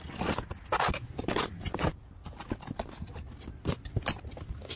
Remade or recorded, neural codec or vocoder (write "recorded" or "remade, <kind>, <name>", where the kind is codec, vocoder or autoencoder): recorded